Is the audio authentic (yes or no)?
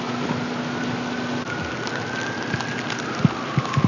yes